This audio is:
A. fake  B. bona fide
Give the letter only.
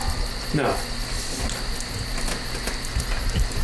B